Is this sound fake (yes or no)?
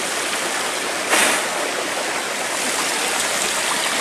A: no